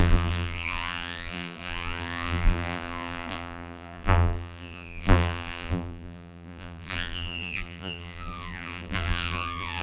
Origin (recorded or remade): remade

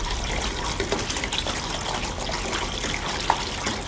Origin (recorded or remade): recorded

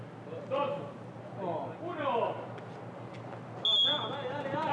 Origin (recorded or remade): recorded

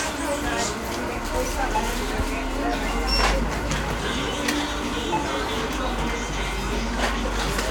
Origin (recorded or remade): recorded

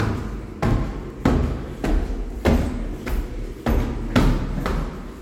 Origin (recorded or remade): recorded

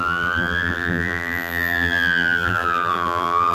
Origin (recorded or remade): remade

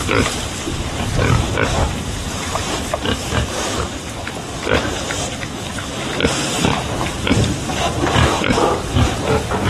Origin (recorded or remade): remade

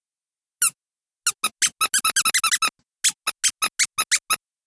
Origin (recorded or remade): recorded